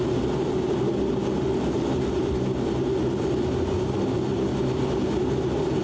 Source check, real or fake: real